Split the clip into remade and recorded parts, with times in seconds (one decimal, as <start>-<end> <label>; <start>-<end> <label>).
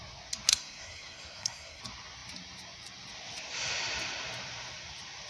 0.0-0.5 recorded; 0.5-1.8 remade; 1.8-5.3 recorded